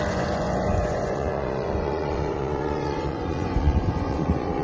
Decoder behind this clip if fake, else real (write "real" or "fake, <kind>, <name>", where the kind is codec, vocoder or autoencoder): fake, vocoder, Vocos